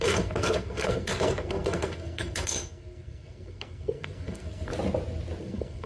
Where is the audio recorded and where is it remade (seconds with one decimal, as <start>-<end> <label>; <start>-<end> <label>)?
0.0-4.7 remade; 4.7-5.4 recorded; 5.4-5.9 remade